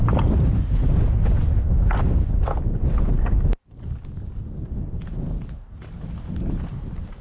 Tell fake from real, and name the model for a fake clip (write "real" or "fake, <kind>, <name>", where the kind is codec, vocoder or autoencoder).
real